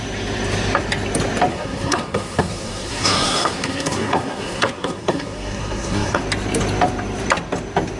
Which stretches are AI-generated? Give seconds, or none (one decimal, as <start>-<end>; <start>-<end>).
1.5-6.2